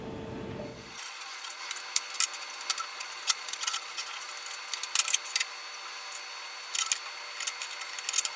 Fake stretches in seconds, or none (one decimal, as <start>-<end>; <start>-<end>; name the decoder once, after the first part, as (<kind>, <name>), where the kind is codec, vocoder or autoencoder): 0.7-1.6 (vocoder, Vocos); 2.9-4.3